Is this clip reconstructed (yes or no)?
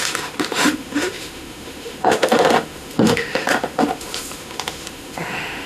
yes